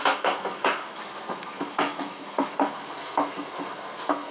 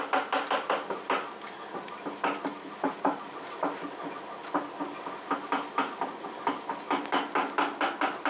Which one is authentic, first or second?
second